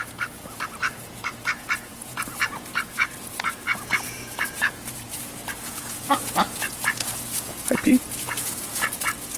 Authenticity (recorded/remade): remade